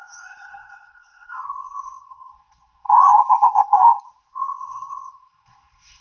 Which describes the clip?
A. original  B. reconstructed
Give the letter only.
B